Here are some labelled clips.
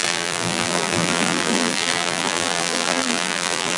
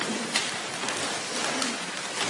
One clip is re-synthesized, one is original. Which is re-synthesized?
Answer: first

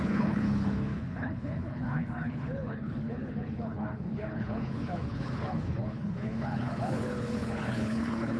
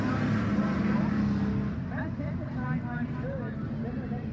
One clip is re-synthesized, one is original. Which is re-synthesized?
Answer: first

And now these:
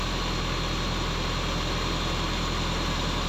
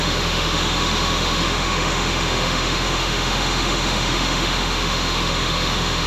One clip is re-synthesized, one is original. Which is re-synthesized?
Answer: second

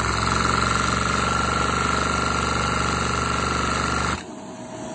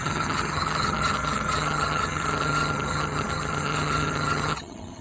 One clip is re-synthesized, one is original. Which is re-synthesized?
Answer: second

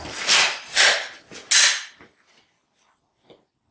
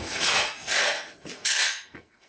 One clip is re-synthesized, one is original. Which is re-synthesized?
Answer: second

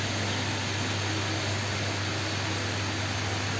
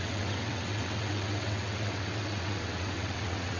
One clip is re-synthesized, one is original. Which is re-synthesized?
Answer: second